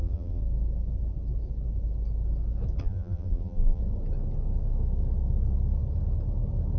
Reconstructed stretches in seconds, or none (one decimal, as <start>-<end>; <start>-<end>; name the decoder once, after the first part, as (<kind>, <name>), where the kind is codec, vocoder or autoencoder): 0.0-0.4 (vocoder, BigVGAN v2); 2.8-3.8